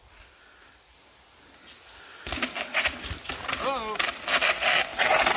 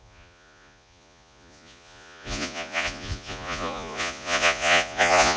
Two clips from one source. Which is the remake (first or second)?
second